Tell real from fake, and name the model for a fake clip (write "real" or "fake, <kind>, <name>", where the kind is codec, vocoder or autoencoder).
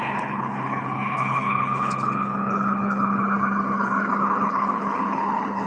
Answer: fake, codec, HILCodec